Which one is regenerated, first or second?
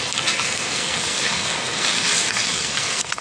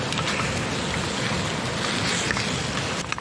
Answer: first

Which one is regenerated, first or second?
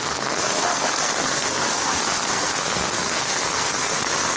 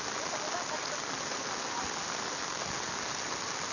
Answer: first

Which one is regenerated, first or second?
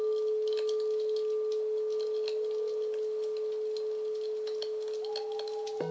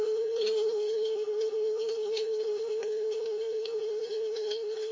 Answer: second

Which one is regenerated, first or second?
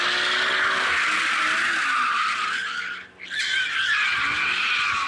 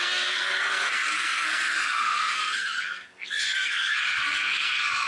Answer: second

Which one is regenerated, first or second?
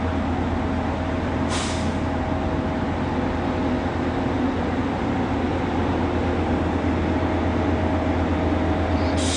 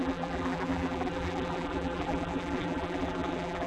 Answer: second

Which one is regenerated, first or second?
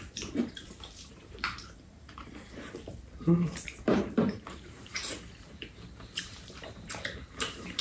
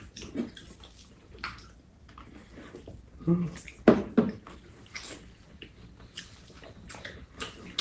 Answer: first